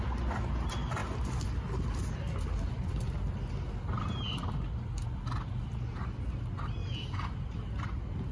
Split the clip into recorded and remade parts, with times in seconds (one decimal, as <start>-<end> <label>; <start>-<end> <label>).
0.0-8.3 recorded